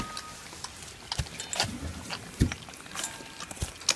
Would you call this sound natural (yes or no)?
yes